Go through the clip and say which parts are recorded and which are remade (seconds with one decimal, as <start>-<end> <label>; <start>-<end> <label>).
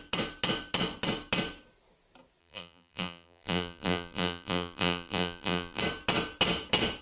0.0-2.4 recorded; 2.4-5.8 remade; 5.8-7.0 recorded